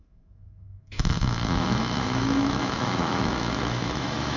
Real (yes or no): no